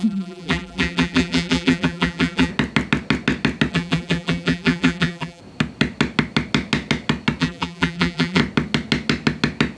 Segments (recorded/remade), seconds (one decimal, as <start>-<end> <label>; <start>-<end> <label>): 0.0-2.5 remade; 2.5-3.7 recorded; 3.7-5.4 remade; 5.4-7.4 recorded; 7.4-8.4 remade; 8.4-9.8 recorded